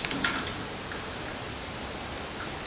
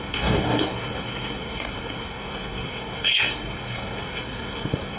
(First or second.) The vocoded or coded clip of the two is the second